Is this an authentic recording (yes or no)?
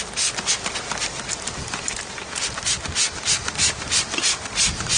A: yes